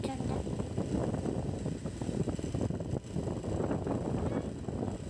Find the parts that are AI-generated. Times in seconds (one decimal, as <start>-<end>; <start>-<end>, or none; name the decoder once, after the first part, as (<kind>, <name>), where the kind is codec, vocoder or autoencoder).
none